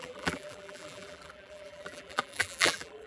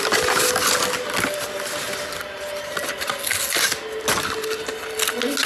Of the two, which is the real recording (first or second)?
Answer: second